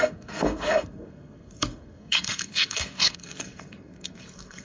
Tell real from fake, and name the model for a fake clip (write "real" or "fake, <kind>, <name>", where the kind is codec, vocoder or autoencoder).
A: fake, codec, SNAC